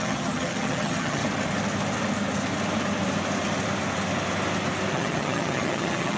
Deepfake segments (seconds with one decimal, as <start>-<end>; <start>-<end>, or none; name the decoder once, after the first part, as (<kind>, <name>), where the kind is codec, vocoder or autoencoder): 0.0-1.2 (vocoder, HiFi-GAN); 4.9-6.2